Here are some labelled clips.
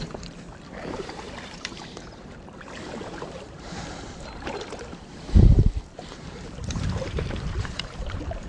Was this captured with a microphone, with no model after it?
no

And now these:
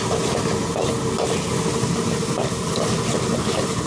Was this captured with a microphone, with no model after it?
yes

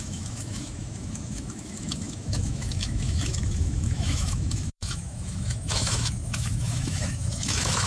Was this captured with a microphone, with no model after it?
no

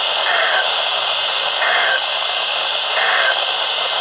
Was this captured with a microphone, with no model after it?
no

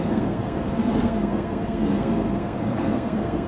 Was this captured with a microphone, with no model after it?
no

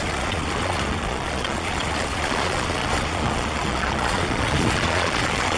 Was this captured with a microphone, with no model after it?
no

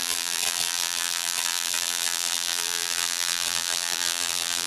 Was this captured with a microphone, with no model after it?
no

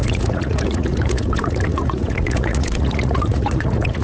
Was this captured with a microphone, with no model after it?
no